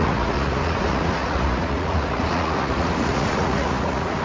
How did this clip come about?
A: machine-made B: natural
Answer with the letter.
A